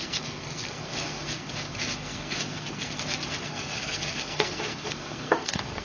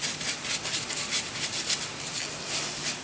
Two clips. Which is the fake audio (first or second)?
first